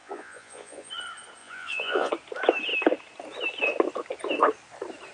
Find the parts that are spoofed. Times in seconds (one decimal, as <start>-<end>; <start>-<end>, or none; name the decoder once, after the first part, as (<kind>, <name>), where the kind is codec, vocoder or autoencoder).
0.0-0.9 (vocoder, Vocos); 1.4-2.1